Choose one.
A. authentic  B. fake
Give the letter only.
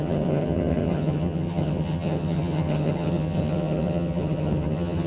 B